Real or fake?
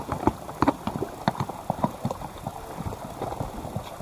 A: real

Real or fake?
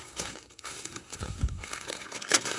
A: fake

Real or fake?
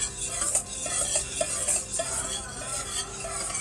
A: real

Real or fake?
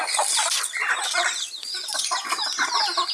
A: real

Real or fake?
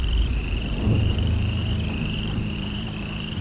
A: fake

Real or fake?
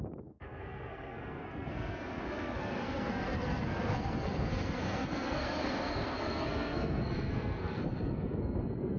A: fake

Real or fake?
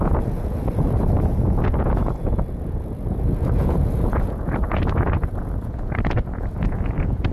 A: fake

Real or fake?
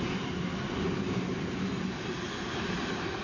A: real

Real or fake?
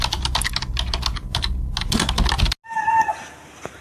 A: real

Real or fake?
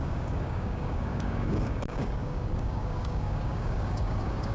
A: fake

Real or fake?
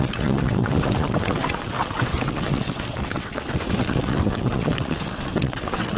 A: fake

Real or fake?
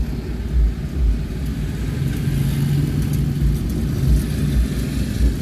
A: real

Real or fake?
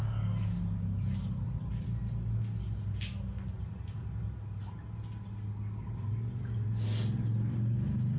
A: real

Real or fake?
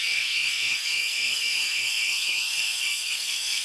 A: fake